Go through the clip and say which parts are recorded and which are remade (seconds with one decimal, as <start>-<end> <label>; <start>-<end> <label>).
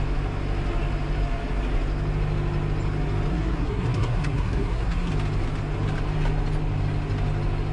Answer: 0.0-3.3 recorded; 3.3-5.1 remade; 5.1-7.7 recorded